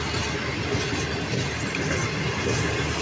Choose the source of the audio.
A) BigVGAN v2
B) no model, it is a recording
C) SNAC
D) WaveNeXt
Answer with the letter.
B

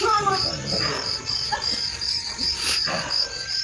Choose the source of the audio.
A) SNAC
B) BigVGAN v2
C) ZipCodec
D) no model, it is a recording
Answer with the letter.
B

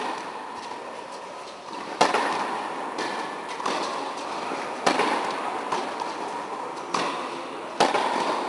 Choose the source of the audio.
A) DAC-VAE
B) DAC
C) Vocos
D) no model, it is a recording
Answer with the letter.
D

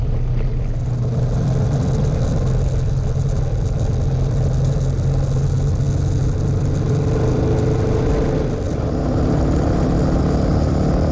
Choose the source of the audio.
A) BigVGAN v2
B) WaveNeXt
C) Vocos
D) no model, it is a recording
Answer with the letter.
D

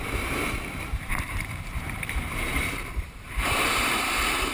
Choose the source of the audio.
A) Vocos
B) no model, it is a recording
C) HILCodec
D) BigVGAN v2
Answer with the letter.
D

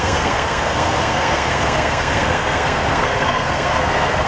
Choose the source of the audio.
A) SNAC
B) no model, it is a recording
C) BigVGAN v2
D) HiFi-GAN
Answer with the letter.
A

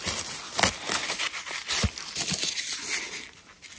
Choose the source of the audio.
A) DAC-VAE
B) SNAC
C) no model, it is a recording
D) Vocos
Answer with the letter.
C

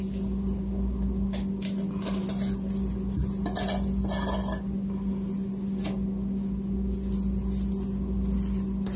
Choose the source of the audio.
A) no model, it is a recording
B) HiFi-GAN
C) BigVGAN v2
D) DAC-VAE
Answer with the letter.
A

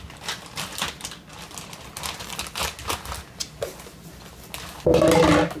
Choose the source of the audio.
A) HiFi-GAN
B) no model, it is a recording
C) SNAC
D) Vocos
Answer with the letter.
B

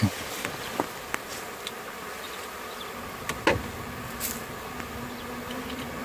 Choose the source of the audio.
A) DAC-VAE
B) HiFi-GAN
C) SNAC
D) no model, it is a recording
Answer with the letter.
D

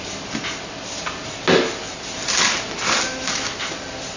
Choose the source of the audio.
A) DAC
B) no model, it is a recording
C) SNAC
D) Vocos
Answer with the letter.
B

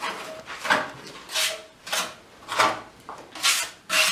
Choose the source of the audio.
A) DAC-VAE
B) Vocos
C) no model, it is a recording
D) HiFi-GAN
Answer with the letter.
C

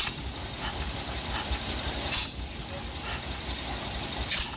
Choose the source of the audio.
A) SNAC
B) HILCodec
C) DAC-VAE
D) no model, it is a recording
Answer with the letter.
D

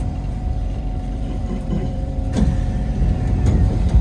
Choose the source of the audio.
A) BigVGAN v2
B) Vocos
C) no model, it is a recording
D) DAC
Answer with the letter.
A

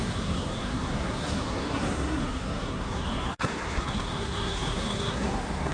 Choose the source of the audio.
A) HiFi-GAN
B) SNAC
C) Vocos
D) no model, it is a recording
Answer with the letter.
B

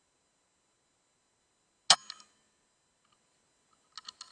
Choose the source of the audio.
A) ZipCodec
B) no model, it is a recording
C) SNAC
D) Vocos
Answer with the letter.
B